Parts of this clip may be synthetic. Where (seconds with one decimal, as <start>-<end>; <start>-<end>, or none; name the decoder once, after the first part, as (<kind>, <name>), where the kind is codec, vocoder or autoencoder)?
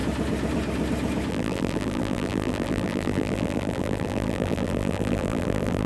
1.3-5.9 (vocoder, BigVGAN v2)